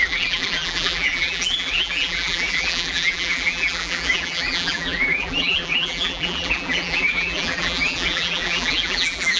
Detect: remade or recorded remade